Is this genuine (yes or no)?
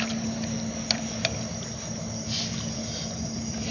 yes